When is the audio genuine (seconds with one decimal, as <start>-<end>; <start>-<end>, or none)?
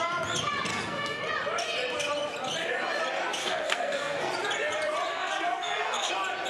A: 0.0-0.7; 1.2-3.4; 4.3-5.1; 6.1-6.5